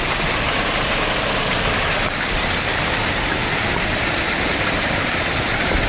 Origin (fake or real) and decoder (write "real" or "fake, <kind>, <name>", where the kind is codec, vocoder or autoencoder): fake, vocoder, BigVGAN v2